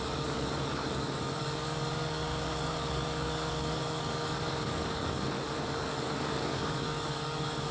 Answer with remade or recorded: remade